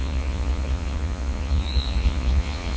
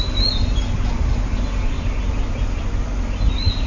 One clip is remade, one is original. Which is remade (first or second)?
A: first